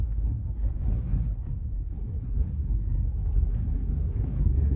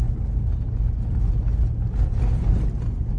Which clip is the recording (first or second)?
second